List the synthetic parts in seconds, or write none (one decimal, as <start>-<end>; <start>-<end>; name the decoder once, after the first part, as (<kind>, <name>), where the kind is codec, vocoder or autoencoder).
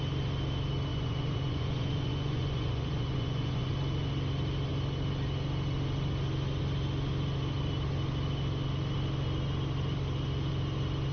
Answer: 0.9-3.7 (vocoder, Vocos)